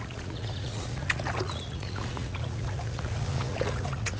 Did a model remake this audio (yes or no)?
yes